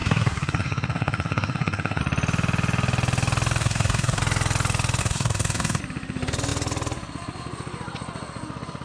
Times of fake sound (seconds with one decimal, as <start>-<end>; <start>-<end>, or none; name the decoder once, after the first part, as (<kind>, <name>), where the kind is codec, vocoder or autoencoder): 0.0-2.0 (codec, SNAC); 3.6-4.2; 5.0-5.8